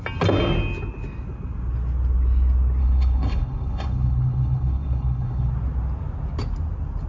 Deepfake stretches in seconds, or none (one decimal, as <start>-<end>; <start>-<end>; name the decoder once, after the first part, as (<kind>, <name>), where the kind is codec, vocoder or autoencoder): 2.8-5.5 (codec, HILCodec)